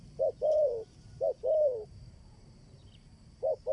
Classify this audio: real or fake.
fake